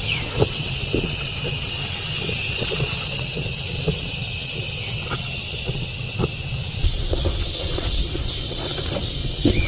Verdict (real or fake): fake